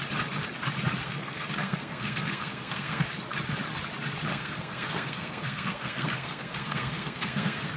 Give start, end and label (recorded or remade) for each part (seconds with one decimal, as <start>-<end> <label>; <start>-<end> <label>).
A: 0.0-1.0 recorded; 1.0-3.1 remade; 3.1-4.3 recorded; 4.3-7.8 remade